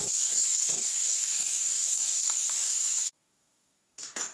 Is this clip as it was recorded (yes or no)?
no